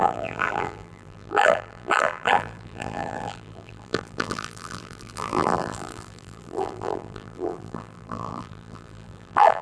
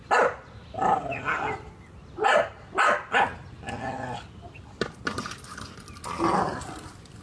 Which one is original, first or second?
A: second